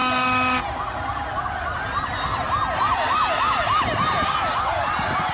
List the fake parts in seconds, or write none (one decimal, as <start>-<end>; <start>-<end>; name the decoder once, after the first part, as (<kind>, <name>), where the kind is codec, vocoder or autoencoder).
0.0-0.6 (autoencoder, DAC-VAE)